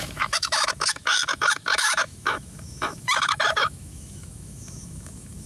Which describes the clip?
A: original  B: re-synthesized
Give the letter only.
B